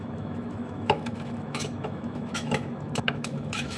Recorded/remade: remade